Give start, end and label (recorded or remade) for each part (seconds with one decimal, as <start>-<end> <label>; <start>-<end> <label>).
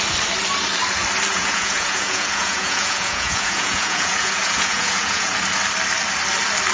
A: 0.0-1.3 recorded; 1.3-5.3 remade; 5.3-6.7 recorded